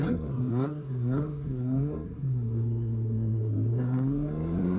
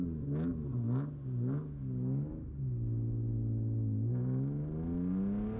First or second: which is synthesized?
first